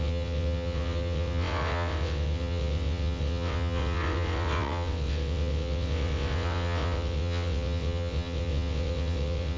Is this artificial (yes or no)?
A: yes